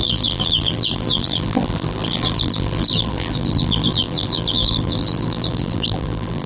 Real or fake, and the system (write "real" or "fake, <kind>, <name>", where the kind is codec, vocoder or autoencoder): fake, vocoder, BigVGAN v2